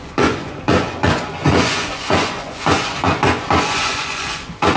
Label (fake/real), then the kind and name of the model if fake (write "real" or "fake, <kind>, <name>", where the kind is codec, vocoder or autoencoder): fake, vocoder, Vocos